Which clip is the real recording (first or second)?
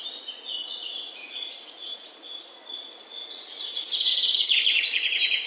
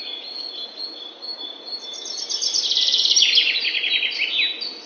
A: second